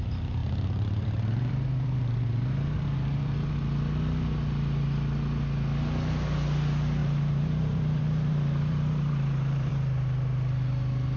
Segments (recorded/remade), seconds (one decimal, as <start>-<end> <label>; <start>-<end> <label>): 0.0-0.4 recorded; 0.4-3.5 remade; 3.5-7.0 recorded; 7.0-9.7 remade; 9.7-11.2 recorded